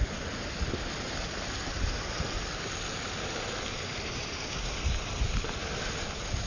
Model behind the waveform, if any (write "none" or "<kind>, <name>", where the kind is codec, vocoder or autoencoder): none